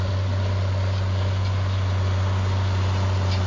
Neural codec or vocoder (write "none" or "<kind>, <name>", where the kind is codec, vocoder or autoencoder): none